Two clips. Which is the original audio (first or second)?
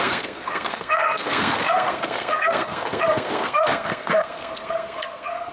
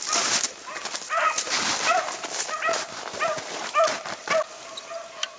second